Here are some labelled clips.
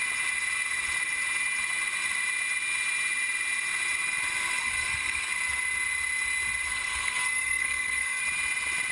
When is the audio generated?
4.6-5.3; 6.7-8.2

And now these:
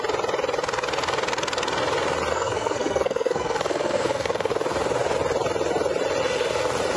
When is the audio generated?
2.3-4.5

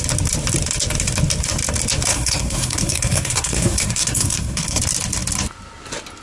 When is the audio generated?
2.1-4.8

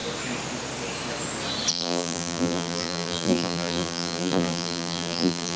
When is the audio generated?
1.7-5.6

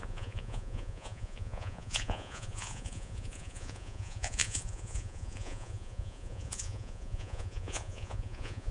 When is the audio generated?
0.0-8.7

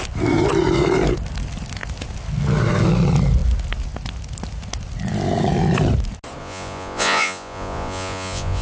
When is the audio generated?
6.4-8.6

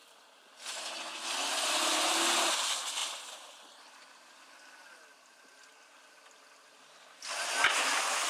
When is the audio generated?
none